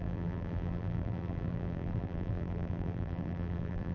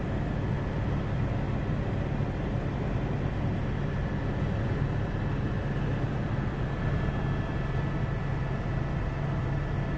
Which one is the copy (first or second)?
first